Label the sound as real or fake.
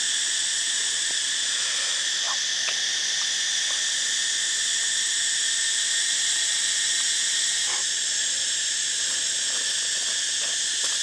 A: real